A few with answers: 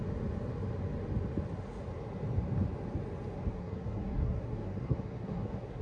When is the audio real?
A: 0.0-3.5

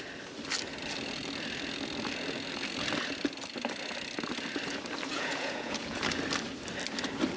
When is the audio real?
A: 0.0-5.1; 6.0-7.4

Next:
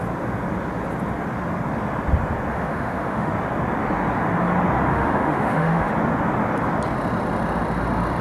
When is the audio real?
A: 0.0-2.5; 3.3-4.9; 5.9-8.2